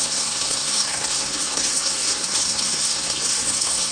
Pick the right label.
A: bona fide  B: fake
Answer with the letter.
B